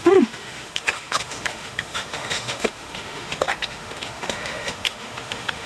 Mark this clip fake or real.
fake